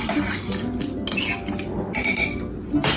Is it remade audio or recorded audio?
recorded